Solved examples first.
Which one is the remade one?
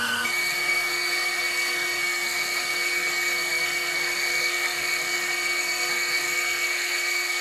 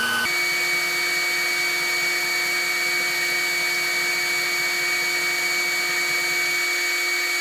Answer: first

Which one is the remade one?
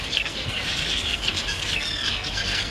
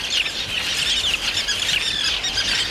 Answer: first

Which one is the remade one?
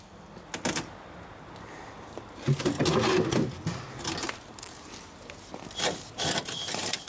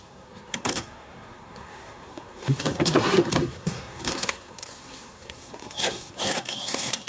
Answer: second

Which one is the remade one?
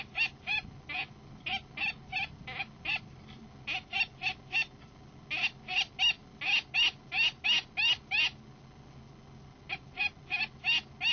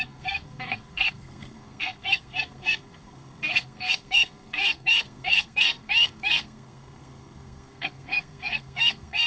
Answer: second